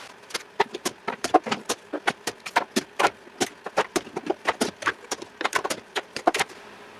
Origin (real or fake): fake